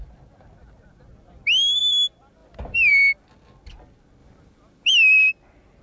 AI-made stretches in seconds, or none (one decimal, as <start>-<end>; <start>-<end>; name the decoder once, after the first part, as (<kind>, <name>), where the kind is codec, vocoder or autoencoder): none